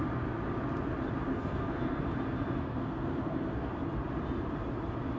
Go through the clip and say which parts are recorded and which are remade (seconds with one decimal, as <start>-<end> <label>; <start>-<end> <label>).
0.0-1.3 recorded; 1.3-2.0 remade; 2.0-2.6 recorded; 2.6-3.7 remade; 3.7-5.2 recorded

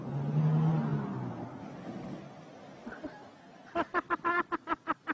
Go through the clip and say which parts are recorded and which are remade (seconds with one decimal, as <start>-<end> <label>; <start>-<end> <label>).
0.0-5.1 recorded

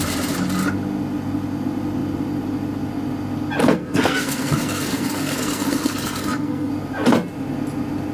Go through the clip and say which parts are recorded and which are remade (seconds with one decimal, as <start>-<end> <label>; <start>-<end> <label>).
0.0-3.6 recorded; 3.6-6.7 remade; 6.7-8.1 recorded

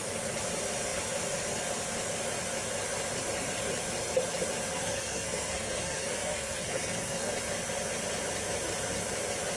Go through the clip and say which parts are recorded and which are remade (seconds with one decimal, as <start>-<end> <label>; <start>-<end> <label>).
0.0-4.7 recorded; 4.7-7.3 remade; 7.3-9.6 recorded

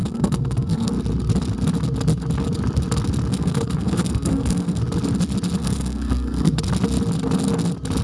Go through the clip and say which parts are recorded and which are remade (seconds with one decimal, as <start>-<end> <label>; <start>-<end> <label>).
0.0-0.9 remade; 0.9-3.3 recorded; 3.3-4.8 remade; 4.8-5.6 recorded; 5.6-6.6 remade; 6.6-8.0 recorded

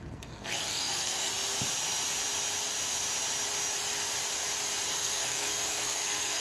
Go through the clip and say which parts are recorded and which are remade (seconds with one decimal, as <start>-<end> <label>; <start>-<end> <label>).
0.0-1.3 remade; 1.3-4.9 recorded; 4.9-6.4 remade

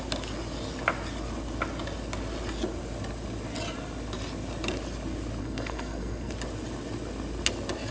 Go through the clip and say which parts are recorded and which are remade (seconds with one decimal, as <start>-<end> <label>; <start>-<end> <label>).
0.0-5.4 recorded; 5.4-6.3 remade; 6.3-7.9 recorded